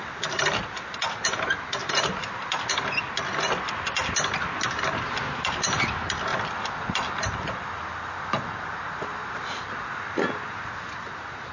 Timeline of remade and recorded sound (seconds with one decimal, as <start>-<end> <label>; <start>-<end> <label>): 0.0-6.3 recorded; 6.3-10.2 remade; 10.2-11.5 recorded